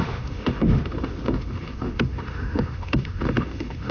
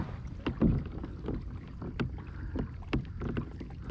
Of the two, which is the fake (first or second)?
first